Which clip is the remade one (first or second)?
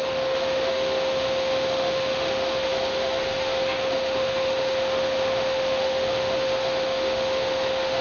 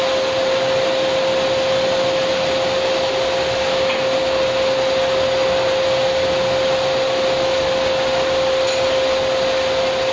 first